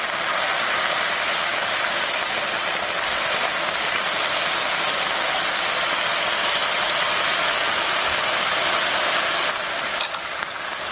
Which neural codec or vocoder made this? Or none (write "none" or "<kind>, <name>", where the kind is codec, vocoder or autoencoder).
none